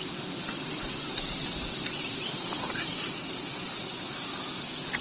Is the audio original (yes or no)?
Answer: yes